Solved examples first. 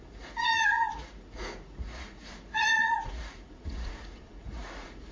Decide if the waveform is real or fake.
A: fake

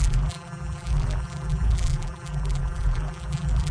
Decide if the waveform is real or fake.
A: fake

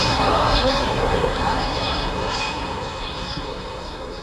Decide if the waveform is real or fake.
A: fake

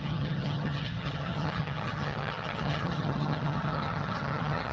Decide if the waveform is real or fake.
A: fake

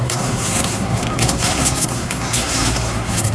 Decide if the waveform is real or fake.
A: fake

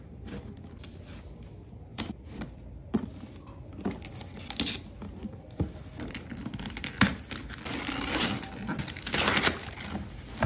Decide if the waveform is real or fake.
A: real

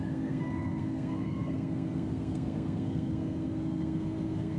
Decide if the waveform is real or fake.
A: fake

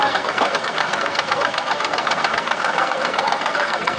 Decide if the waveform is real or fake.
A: fake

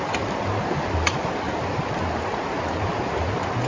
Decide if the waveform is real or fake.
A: real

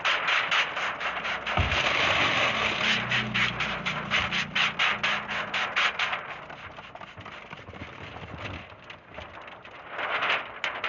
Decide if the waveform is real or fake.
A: real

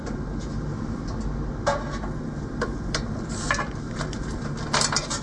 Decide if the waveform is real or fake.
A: real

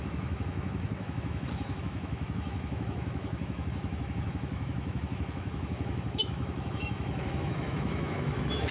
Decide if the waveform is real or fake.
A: fake